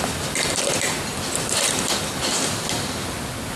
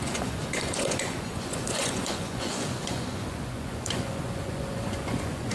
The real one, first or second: first